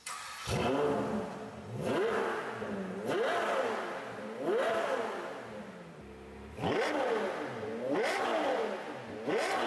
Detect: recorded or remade recorded